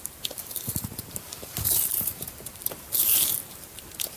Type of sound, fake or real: fake